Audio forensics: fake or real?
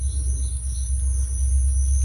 real